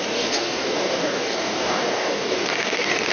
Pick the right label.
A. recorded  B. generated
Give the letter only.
B